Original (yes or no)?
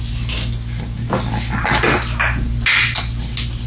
yes